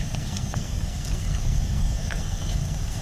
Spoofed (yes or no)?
yes